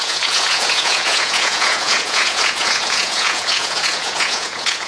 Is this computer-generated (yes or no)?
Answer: yes